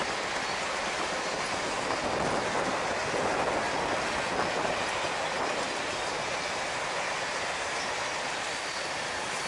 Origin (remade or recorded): recorded